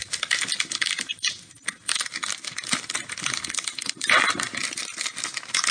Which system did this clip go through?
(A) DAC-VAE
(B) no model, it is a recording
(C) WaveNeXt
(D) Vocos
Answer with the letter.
B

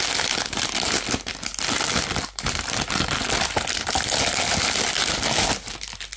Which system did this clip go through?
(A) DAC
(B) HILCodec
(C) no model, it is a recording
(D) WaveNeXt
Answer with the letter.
C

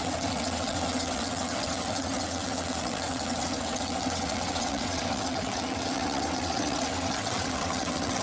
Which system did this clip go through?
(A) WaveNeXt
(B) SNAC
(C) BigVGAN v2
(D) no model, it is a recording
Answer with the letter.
A